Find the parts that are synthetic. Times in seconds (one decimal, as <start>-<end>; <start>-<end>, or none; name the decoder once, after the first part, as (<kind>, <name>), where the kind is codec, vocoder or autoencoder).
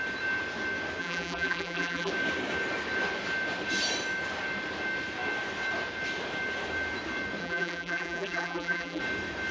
1.0-2.1 (vocoder, BigVGAN v2); 7.4-9.0